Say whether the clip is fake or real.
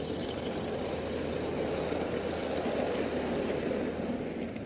real